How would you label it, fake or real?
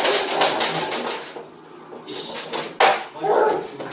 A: real